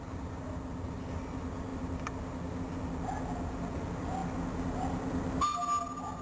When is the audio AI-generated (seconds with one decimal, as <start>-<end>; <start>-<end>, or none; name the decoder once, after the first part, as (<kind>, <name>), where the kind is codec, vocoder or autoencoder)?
none